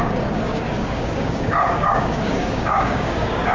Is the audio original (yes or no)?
no